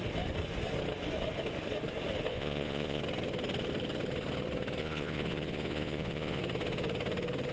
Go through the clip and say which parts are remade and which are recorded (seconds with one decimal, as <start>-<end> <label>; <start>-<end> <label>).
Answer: 0.0-2.3 recorded; 2.3-3.0 remade; 3.0-4.8 recorded; 4.8-6.4 remade; 6.4-7.5 recorded